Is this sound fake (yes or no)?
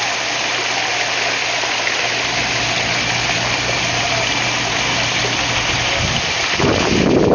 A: no